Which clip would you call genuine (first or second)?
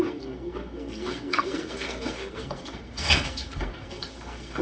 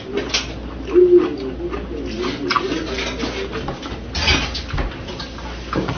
second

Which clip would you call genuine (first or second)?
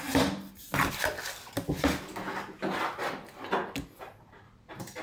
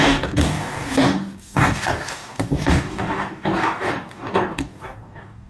first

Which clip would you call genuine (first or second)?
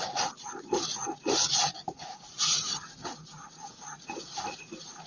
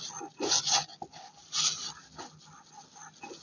second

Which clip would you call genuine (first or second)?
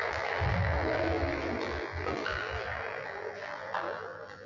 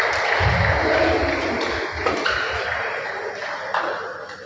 second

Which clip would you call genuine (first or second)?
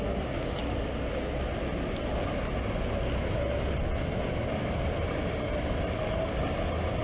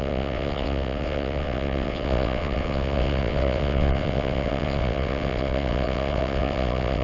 first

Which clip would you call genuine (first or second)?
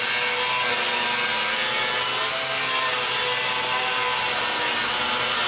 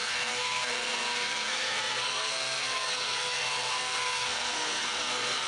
first